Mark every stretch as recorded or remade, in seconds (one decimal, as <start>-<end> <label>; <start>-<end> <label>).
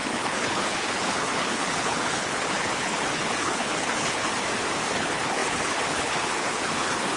0.0-4.3 remade; 4.3-4.9 recorded; 4.9-7.2 remade